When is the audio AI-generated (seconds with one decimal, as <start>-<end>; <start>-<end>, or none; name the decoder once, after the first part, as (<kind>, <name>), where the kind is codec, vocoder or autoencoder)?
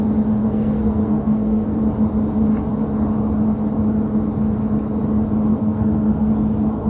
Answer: 0.4-1.8 (codec, SNAC); 5.5-6.3